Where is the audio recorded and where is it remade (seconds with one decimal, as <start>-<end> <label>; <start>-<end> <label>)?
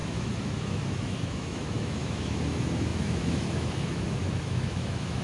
0.0-5.2 remade